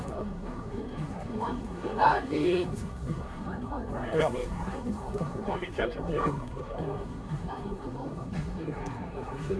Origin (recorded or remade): remade